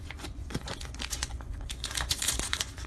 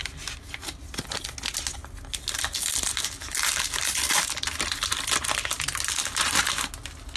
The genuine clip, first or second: second